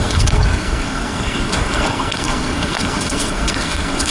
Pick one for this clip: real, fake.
fake